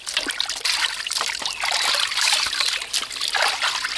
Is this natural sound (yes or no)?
yes